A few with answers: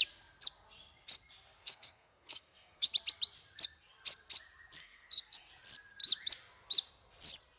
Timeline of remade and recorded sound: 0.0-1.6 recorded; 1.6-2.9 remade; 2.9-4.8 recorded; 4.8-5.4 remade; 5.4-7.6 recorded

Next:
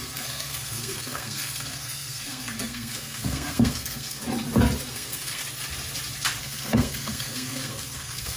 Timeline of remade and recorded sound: 0.0-4.2 remade; 4.2-4.9 recorded; 4.9-5.4 remade; 5.4-6.4 recorded; 6.4-8.4 remade

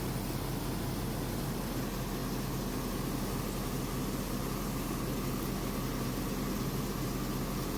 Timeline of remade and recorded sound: 0.0-7.8 recorded

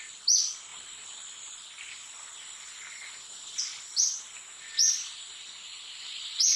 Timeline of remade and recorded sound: 0.0-6.6 recorded

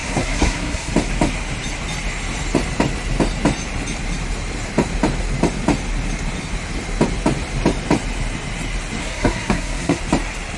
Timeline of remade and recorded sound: 0.0-0.9 remade; 0.9-9.0 recorded; 9.0-10.0 remade; 10.0-10.6 recorded